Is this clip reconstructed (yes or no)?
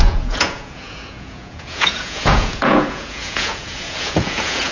yes